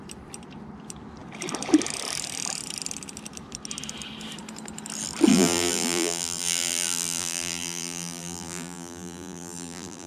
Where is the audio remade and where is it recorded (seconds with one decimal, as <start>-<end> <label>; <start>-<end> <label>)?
0.0-5.3 recorded; 5.3-10.1 remade